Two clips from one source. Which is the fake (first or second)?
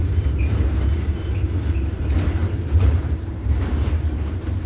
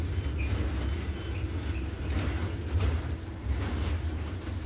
first